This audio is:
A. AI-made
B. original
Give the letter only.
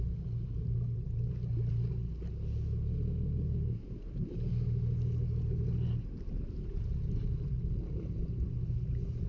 B